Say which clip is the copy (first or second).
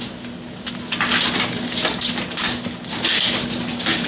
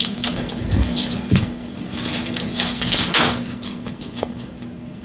second